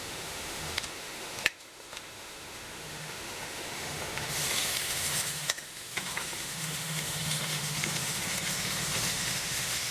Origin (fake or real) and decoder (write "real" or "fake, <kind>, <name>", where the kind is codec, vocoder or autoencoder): fake, autoencoder, DAC-VAE